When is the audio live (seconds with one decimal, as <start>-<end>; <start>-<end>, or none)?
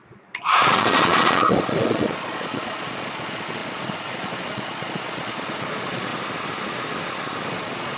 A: 6.1-7.5